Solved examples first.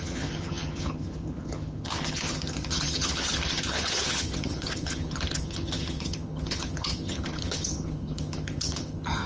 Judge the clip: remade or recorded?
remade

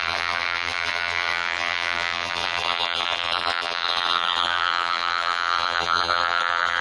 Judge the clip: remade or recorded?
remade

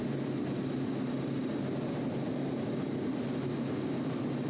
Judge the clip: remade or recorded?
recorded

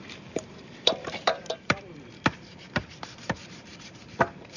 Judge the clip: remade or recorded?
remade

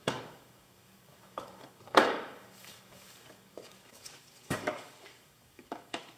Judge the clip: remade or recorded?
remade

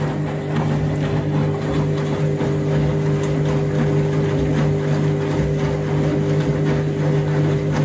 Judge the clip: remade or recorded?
recorded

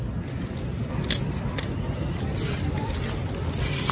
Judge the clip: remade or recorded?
recorded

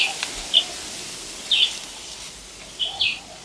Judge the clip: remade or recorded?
recorded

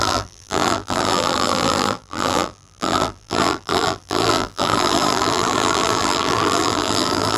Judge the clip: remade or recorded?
remade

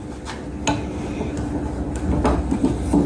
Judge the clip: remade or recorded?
recorded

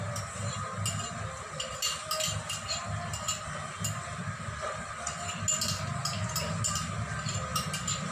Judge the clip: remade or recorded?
recorded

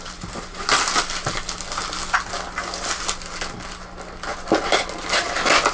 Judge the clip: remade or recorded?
recorded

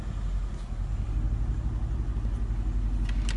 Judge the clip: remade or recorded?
recorded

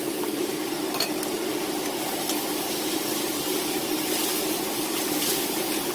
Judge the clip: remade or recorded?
remade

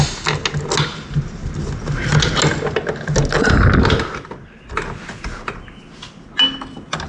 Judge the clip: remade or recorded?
recorded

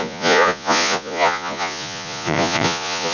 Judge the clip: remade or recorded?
remade